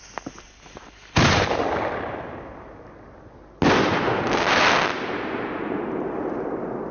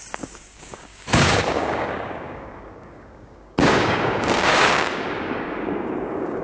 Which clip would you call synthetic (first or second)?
second